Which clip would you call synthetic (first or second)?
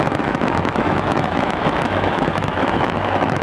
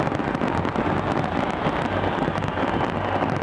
first